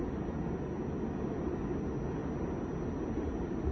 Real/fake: real